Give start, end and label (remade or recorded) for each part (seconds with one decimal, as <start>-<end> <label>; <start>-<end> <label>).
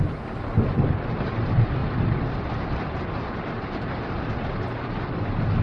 0.0-5.6 recorded